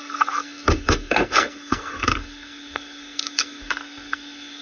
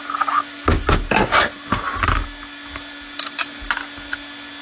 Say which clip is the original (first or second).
second